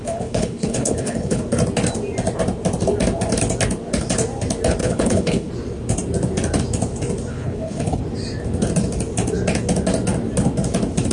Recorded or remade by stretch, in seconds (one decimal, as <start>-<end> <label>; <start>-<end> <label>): 0.0-1.4 remade; 1.4-4.8 recorded; 4.8-5.5 remade; 5.5-7.3 recorded; 7.3-8.0 remade; 8.0-11.1 recorded